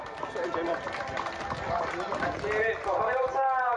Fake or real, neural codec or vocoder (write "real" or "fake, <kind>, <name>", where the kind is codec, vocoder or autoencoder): real